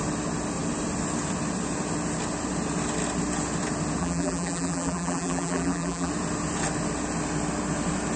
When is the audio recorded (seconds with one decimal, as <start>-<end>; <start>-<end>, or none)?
0.0-4.0; 6.1-8.2